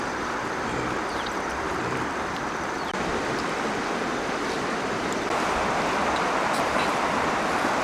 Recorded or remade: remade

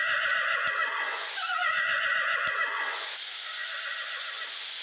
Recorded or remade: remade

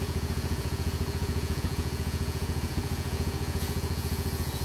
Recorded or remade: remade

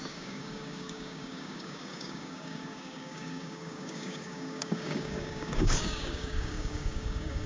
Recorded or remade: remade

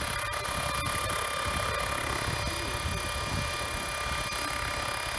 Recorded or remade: recorded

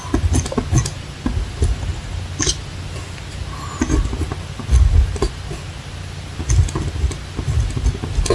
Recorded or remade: recorded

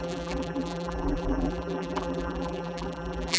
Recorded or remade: remade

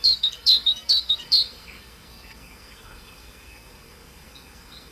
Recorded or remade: remade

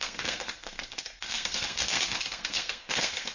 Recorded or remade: remade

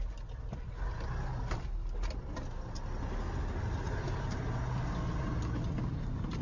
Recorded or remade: recorded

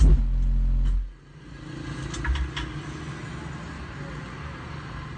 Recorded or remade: recorded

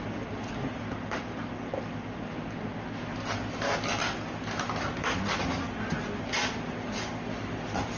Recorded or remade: recorded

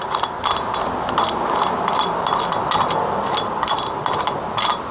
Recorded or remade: recorded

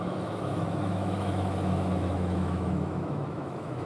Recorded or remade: remade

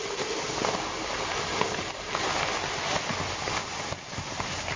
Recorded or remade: recorded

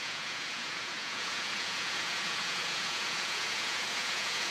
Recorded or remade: remade